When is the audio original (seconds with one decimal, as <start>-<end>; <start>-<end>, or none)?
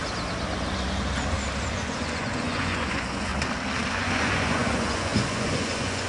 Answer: 0.0-1.7; 3.3-3.9